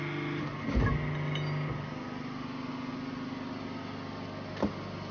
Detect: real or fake real